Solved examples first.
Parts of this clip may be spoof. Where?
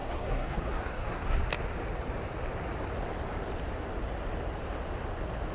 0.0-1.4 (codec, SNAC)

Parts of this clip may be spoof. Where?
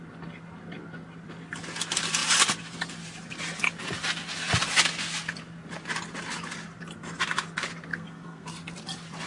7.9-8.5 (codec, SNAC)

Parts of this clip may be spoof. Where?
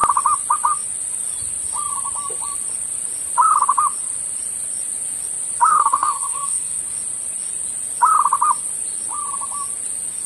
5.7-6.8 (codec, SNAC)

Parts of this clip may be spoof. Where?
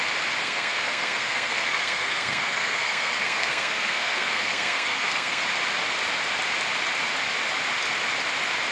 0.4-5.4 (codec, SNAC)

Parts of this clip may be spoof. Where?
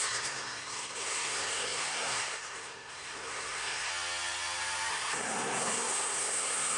0.0-3.9 (codec, SNAC); 4.9-6.8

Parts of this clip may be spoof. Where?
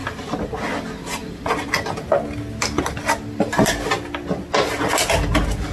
none